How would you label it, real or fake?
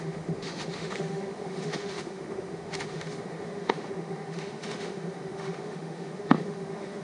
fake